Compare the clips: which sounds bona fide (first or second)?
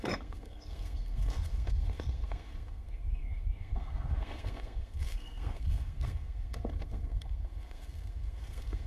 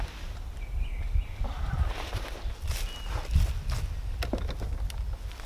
second